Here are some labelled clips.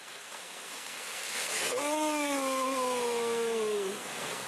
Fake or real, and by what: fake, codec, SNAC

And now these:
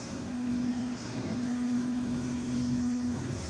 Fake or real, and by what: fake, codec, SNAC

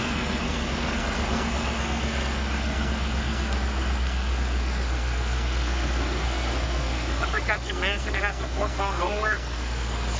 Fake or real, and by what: fake, codec, SNAC